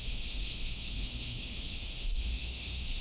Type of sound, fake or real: fake